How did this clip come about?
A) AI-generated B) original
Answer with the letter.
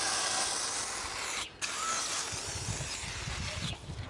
B